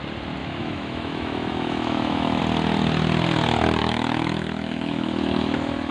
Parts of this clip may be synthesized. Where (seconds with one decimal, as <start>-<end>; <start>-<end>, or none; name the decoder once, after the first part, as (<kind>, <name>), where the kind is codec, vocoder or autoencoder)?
0.4-2.4 (autoencoder, DAC-VAE); 3.8-5.9